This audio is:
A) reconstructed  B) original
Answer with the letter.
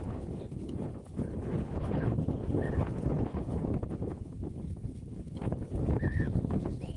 A